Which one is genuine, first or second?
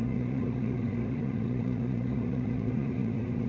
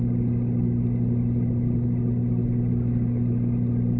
second